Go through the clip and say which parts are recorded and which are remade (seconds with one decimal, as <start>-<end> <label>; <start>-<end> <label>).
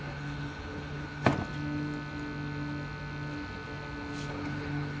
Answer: 0.0-1.3 remade; 1.3-4.3 recorded; 4.3-5.0 remade